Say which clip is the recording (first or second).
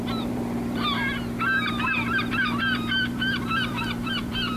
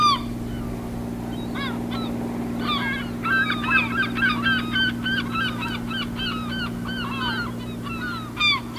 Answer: second